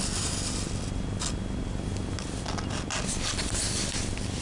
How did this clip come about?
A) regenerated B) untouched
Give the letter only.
B